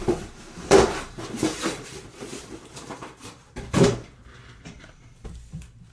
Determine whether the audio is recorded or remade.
remade